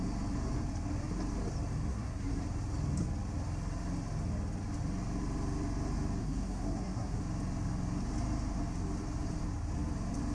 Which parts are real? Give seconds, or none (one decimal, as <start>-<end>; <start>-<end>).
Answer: 0.0-1.9; 2.4-6.2; 7.2-10.3